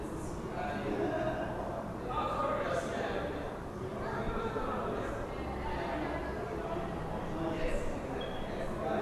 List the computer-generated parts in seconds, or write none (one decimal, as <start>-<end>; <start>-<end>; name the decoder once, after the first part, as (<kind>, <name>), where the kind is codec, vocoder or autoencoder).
2.4-4.5 (vocoder, BigVGAN v2)